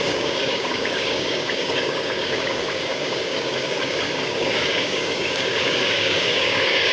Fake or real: fake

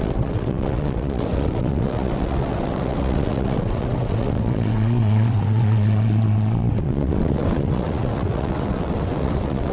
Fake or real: fake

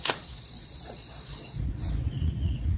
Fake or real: fake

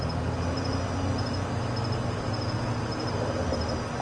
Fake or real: real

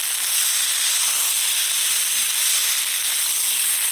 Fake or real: real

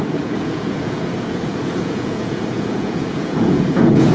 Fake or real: fake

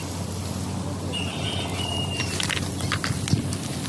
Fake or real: real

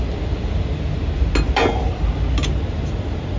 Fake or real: real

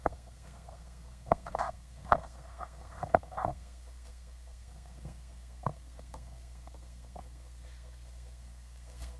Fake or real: fake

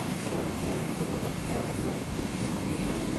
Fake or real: fake